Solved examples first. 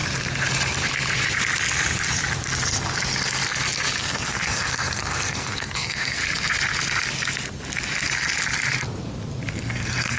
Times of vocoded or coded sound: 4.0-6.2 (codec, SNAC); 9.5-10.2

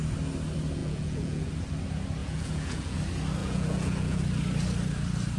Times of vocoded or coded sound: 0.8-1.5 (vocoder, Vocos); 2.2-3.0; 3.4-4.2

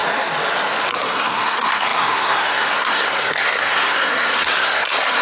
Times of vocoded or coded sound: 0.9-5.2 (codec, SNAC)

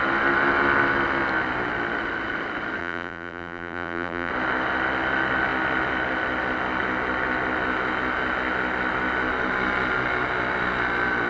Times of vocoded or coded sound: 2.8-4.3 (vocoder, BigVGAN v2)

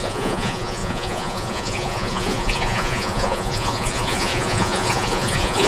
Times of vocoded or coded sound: 0.0-5.7 (vocoder, Vocos)

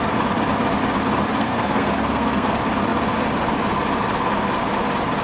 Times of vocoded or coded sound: 1.4-2.5 (codec, SNAC)

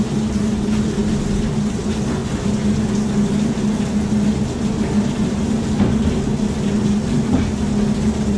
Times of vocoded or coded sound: none